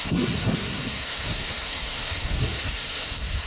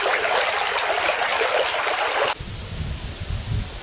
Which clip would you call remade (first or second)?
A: first